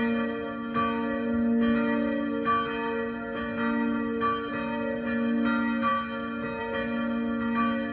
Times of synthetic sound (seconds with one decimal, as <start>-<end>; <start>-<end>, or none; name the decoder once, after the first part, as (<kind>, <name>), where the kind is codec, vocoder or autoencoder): none